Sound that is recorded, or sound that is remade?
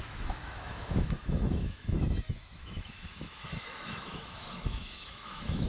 remade